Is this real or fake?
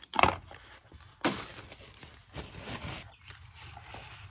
real